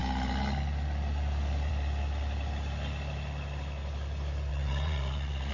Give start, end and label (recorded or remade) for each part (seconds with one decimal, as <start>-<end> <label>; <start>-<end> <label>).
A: 0.0-4.5 recorded; 4.5-5.5 remade